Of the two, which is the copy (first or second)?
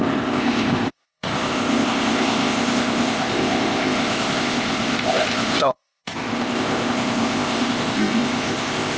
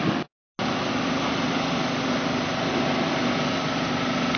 first